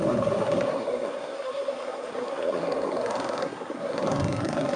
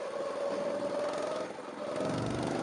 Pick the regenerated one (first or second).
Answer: first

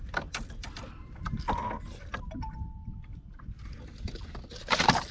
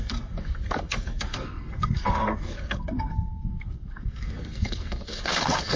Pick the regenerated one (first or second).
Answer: second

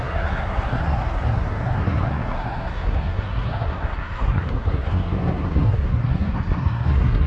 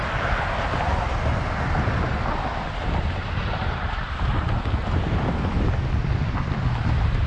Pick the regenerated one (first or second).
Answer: first